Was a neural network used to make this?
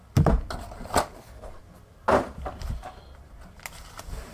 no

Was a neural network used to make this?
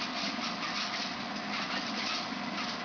no